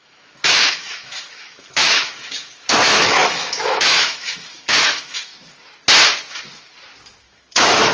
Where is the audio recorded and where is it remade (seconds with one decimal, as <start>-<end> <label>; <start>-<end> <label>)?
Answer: 0.0-5.3 remade; 5.3-7.2 recorded; 7.2-7.9 remade